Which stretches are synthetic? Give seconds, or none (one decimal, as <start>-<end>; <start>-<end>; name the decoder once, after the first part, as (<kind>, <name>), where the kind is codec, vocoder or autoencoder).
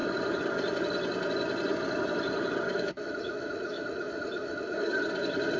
2.7-4.9 (autoencoder, DAC-VAE)